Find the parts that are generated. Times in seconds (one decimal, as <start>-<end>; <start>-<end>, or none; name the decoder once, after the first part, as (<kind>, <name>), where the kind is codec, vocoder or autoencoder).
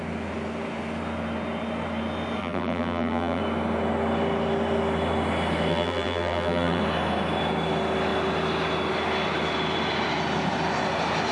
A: 2.4-3.4 (vocoder, BigVGAN v2); 5.7-6.8